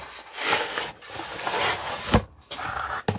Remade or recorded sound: recorded